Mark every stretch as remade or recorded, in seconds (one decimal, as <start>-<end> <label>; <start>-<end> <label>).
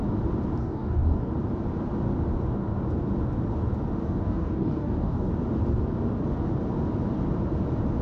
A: 0.0-0.6 recorded; 0.6-1.3 remade; 1.3-4.0 recorded; 4.0-5.3 remade; 5.3-8.0 recorded